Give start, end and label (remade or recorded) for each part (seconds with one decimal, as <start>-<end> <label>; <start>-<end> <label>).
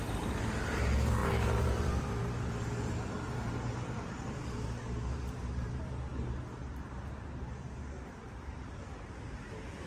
0.0-9.9 remade